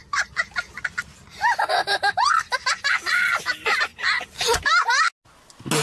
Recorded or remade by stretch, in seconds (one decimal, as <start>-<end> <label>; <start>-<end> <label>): 0.0-3.4 remade; 3.4-3.9 recorded; 3.9-5.0 remade; 5.0-5.8 recorded